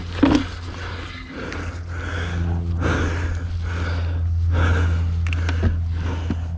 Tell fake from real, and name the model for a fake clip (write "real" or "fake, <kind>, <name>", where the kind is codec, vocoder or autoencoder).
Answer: real